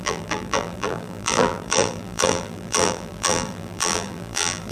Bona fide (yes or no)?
no